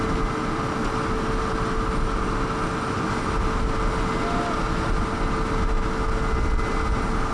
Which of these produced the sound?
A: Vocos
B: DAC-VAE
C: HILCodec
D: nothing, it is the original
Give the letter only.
D